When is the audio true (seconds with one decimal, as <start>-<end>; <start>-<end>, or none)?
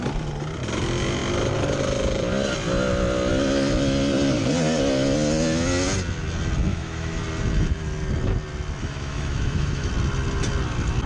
0.0-6.7; 7.2-8.8; 9.9-11.1